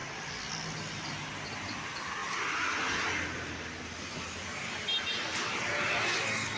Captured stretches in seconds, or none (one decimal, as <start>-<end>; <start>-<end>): 0.0-6.6